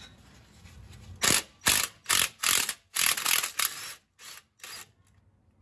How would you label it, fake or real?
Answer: real